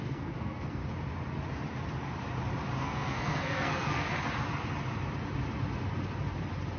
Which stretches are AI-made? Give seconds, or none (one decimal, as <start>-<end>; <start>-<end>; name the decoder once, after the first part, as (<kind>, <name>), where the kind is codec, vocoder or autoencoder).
0.0-0.8 (codec, SNAC); 2.8-4.1